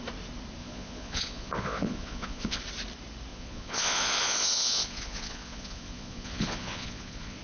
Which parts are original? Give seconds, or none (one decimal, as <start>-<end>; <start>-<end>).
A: 0.0-0.6; 2.6-3.3